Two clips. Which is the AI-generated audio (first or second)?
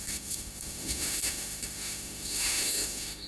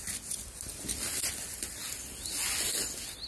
first